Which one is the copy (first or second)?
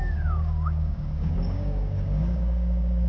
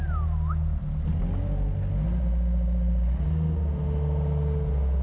first